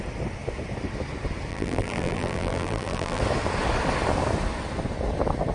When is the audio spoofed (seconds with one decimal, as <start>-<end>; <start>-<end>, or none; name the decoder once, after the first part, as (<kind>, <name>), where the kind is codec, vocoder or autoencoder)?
1.5-3.2 (vocoder, BigVGAN v2)